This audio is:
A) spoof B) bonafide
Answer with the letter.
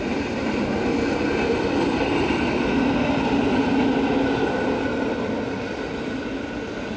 B